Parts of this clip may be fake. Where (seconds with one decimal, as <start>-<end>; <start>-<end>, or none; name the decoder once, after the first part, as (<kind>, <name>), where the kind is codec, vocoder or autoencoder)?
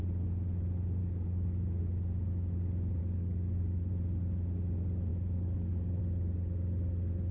1.0-1.8 (codec, DAC); 3.0-3.9; 5.1-6.0